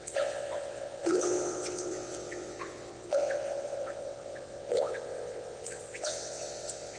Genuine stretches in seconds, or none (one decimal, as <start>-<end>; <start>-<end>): none